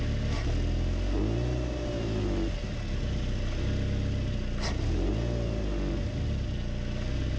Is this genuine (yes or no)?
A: yes